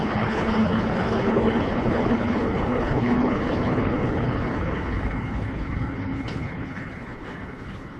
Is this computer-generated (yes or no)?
yes